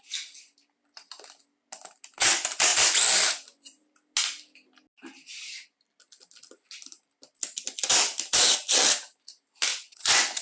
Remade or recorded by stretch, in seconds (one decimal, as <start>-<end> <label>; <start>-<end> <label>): 0.0-9.7 recorded; 9.7-10.4 remade